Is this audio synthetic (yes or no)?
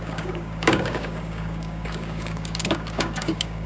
yes